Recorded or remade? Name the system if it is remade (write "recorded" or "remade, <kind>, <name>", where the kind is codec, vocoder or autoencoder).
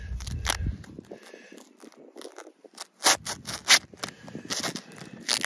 recorded